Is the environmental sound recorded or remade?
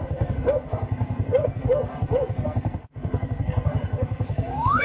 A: remade